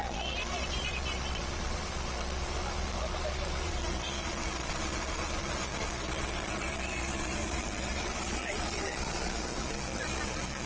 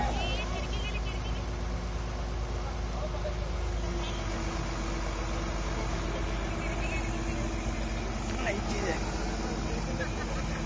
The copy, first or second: first